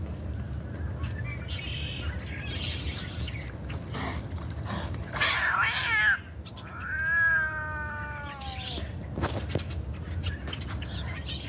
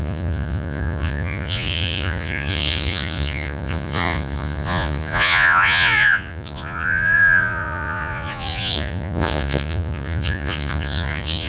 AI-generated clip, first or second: second